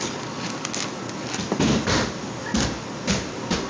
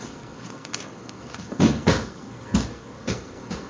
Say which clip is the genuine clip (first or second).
first